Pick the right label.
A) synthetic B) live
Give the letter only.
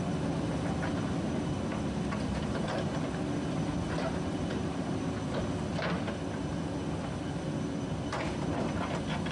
B